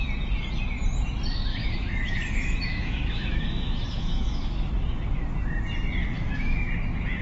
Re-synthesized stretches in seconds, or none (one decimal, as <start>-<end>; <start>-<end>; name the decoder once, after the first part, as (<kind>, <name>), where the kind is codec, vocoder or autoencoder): 1.5-4.7 (autoencoder, DAC-VAE); 6.0-6.7